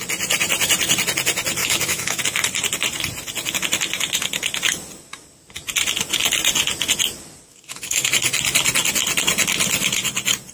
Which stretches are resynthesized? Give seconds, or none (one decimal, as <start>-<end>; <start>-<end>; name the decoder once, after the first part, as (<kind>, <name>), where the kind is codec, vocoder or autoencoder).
1.6-2.2 (autoencoder, DAC-VAE); 7.5-8.1